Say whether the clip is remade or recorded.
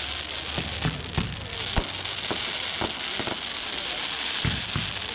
recorded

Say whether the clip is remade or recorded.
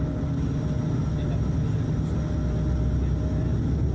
recorded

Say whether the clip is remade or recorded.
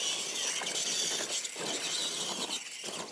recorded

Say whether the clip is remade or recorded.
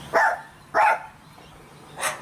recorded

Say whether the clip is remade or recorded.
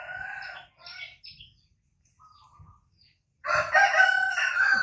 recorded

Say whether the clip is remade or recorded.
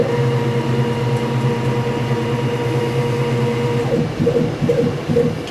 recorded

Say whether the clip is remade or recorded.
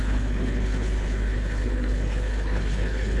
remade